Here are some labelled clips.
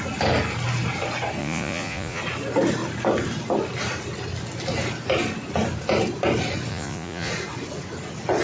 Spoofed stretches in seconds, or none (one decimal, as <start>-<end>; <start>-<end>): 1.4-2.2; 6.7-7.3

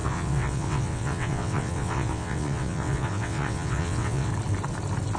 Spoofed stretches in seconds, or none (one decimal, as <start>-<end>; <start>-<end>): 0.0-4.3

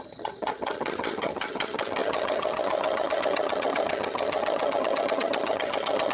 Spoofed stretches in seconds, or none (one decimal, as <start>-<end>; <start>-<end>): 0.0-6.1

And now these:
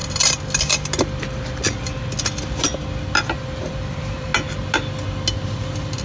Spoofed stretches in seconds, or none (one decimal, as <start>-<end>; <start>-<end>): 3.6-4.3

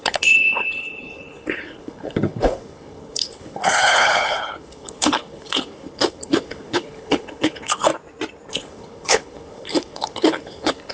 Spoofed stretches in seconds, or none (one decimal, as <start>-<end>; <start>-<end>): 0.0-7.9; 8.5-10.9

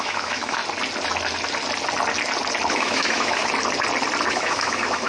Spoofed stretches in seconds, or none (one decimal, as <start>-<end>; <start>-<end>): 0.0-0.6; 2.7-3.4; 4.3-5.1